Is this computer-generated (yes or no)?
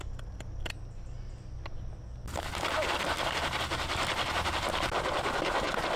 no